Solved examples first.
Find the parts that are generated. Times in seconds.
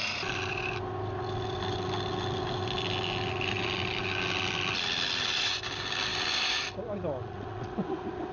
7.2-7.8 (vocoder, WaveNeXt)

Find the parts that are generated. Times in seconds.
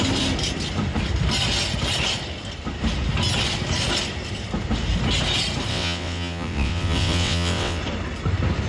5.7-7.8 (vocoder, WaveNeXt)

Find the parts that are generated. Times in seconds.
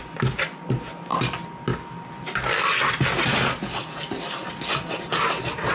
none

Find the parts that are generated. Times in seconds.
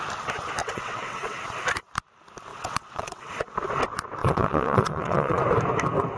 0.6-1.4 (vocoder, WaveNeXt); 2.5-3.3; 4.2-5.4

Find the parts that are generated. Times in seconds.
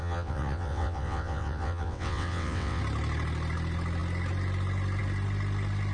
0.0-2.8 (vocoder, WaveNeXt)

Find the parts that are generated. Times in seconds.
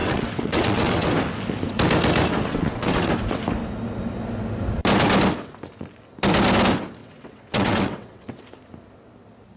0.0-1.1 (vocoder, WaveNeXt); 2.5-3.1; 7.0-8.4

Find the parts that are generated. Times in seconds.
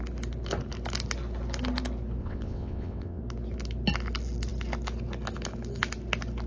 2.2-3.2 (vocoder, WaveNeXt)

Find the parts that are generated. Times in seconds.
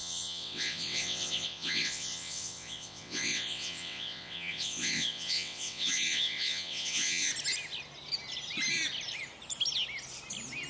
0.0-7.3 (vocoder, WaveNeXt)